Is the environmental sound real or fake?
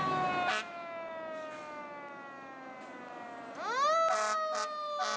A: real